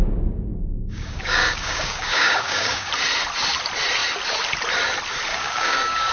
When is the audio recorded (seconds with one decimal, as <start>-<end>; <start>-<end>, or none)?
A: 0.0-0.5; 2.9-5.3